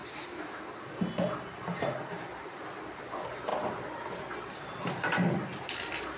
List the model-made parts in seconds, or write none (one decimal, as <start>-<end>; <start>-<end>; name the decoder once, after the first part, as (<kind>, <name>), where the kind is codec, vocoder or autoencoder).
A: none